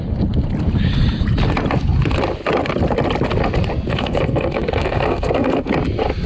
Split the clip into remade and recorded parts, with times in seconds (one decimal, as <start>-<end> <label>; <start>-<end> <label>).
0.0-3.9 recorded; 3.9-5.7 remade; 5.7-6.3 recorded